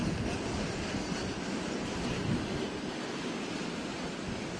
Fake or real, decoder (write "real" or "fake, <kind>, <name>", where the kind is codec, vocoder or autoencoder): real